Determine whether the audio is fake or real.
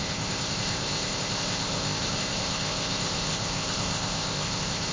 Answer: fake